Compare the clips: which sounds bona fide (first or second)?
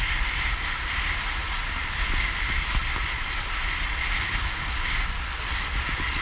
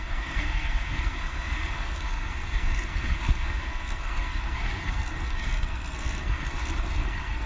first